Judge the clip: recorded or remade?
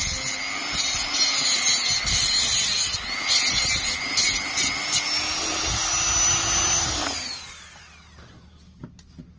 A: recorded